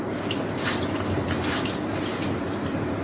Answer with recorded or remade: recorded